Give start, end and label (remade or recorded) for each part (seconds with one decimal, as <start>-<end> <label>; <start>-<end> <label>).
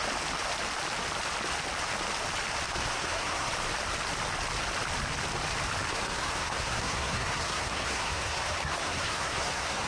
0.0-2.9 recorded; 2.9-3.5 remade; 3.5-5.9 recorded; 5.9-9.9 remade